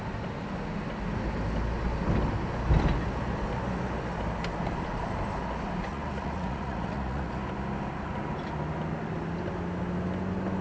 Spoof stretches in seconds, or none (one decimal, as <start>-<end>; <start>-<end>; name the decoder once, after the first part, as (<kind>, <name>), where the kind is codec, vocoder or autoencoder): 5.9-7.3 (vocoder, Vocos)